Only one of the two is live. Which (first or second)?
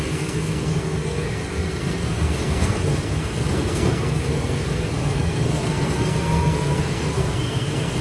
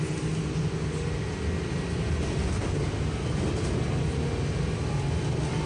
second